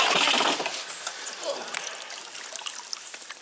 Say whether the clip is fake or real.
real